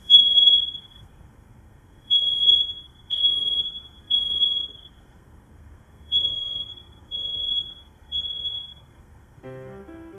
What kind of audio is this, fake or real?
fake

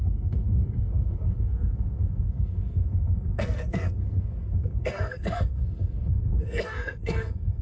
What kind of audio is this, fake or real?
fake